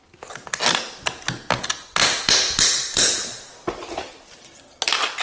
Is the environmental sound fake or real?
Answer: real